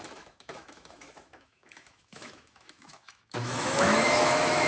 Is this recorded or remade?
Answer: remade